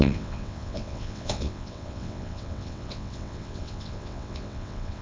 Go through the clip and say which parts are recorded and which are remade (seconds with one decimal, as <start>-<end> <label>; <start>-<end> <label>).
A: 0.0-5.0 remade